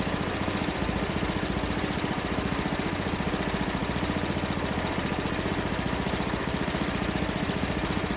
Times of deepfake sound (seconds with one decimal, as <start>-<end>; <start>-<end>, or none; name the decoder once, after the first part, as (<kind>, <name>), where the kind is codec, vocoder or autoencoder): none